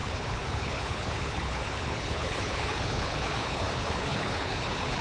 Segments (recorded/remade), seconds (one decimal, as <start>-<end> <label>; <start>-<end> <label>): 0.0-5.0 remade

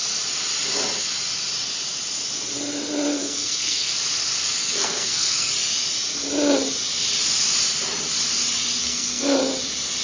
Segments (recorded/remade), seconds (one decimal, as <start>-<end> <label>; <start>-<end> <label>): 0.0-3.1 recorded; 3.1-3.9 remade; 3.9-4.6 recorded; 4.6-5.5 remade; 5.5-8.8 recorded; 8.8-9.4 remade; 9.4-10.0 recorded

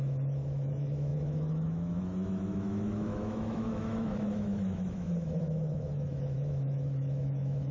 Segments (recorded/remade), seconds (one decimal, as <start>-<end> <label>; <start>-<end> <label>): 0.0-7.7 remade

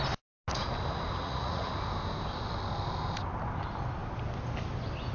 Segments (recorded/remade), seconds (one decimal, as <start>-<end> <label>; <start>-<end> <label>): 0.0-1.2 recorded; 1.2-1.7 remade; 1.7-5.1 recorded